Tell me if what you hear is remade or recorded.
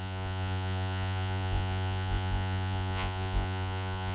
remade